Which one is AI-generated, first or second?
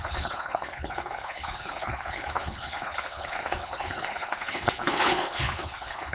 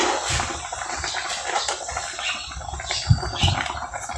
first